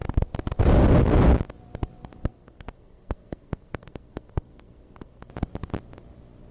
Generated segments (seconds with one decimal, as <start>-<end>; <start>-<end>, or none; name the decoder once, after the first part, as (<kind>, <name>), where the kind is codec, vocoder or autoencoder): 2.3-5.3 (codec, SNAC)